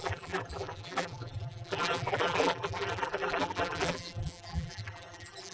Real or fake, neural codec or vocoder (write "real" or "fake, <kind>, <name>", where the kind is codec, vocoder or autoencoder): fake, vocoder, BigVGAN v2